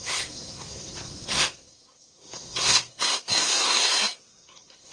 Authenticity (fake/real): fake